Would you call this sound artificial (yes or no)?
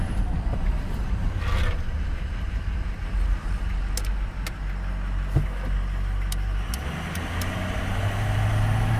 no